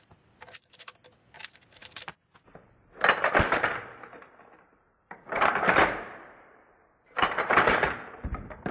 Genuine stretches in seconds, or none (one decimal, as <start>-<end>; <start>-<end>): 0.0-1.8; 4.3-4.7